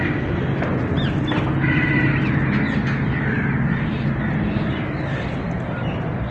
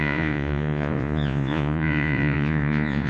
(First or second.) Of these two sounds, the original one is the first